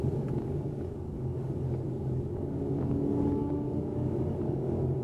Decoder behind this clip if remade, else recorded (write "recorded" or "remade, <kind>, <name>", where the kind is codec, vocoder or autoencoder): remade, codec, DAC